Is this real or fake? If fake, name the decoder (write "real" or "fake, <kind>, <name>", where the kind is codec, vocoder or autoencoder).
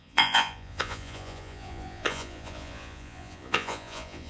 fake, vocoder, Vocos